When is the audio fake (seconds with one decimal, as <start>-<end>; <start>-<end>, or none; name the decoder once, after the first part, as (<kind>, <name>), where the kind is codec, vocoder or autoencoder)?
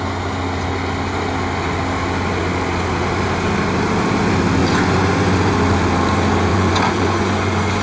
4.6-5.5 (vocoder, Vocos); 6.5-7.8